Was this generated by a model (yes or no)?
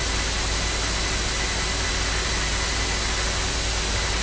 no